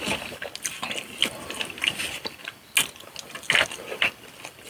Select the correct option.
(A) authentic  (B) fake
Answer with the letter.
A